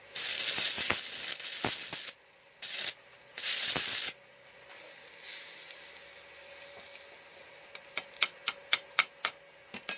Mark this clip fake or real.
real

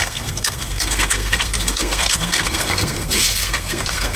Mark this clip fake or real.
fake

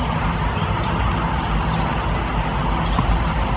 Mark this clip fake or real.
real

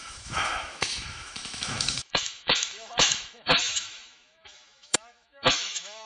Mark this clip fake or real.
fake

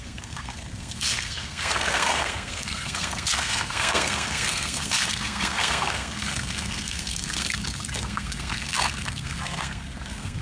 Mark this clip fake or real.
fake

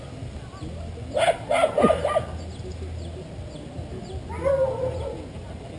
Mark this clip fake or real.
real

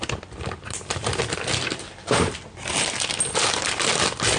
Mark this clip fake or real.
real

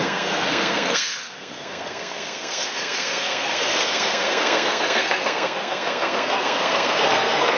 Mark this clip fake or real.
fake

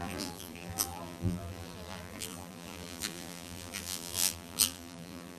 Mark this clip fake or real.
fake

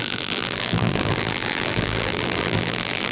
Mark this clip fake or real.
fake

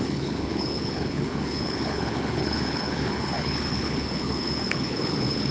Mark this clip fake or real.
fake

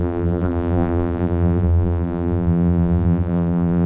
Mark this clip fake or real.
fake